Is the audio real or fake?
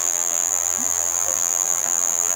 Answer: fake